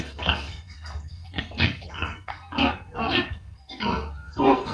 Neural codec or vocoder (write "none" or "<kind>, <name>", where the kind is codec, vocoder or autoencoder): codec, SNAC